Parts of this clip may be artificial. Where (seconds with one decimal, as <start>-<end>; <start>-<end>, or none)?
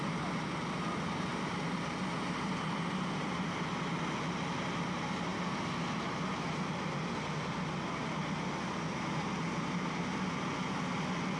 none